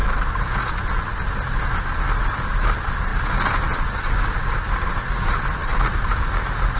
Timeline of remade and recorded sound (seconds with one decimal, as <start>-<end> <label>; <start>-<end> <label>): 0.0-6.8 recorded